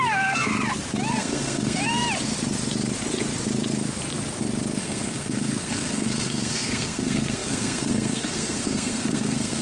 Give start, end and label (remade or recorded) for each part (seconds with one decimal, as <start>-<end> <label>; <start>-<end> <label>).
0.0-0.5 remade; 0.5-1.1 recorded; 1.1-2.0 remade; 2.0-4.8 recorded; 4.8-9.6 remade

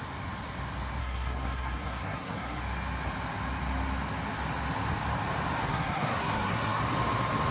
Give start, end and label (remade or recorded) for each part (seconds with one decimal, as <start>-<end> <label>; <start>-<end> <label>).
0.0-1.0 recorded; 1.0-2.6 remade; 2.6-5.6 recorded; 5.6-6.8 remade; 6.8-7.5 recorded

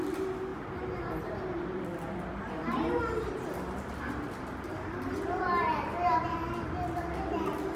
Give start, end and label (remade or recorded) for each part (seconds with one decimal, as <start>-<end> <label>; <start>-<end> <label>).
0.0-7.8 recorded